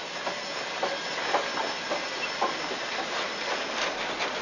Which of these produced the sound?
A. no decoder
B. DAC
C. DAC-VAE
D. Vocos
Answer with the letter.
A